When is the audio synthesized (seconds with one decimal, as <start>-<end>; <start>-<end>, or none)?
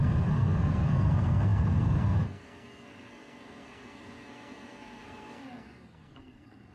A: 0.0-6.7